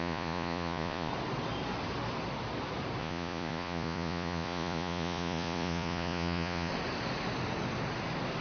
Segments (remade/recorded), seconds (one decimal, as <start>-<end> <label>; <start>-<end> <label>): 0.0-1.1 remade; 1.1-3.0 recorded; 3.0-6.7 remade; 6.7-8.4 recorded